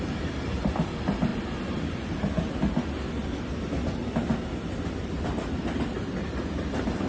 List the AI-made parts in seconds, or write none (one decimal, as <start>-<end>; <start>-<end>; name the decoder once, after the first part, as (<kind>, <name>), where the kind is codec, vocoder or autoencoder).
none

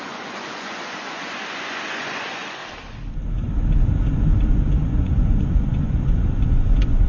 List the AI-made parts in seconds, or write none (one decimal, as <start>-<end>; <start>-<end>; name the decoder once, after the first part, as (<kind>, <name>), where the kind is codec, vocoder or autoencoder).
0.0-2.6 (vocoder, Vocos); 4.5-7.1

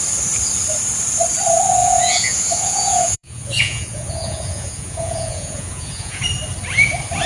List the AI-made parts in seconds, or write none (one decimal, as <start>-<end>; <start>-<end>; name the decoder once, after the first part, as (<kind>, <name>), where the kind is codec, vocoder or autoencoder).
1.8-6.2 (vocoder, Vocos)

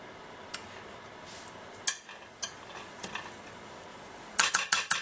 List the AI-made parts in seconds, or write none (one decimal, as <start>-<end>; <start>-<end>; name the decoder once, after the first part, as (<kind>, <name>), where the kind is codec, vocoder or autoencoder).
3.9-4.5 (vocoder, Vocos)

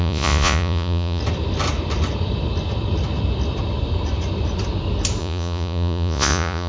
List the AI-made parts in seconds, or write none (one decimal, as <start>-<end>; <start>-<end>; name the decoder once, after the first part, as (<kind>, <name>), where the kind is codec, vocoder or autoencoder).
0.0-1.2 (vocoder, Vocos); 5.2-6.7

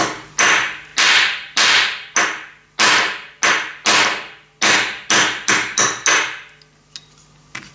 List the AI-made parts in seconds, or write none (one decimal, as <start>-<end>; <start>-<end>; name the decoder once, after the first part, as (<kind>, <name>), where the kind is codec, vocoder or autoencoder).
none

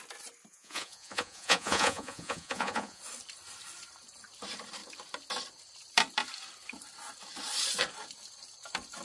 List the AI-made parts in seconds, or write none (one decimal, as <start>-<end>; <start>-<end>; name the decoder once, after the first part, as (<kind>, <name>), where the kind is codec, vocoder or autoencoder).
0.5-3.0 (vocoder, Vocos)